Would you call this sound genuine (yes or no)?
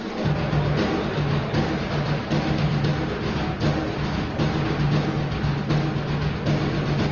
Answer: yes